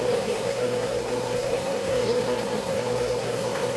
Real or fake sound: fake